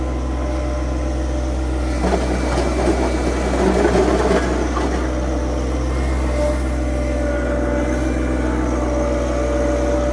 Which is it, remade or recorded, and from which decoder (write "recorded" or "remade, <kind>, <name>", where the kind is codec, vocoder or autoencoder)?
recorded